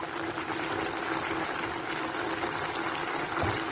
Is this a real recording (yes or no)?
yes